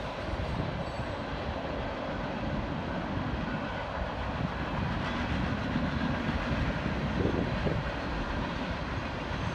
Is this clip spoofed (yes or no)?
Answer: no